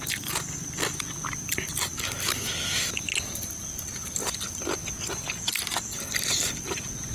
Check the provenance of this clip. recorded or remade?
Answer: recorded